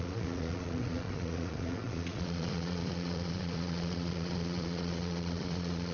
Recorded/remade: remade